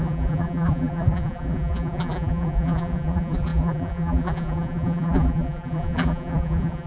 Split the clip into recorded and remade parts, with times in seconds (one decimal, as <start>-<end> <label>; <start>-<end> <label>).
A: 0.0-6.9 remade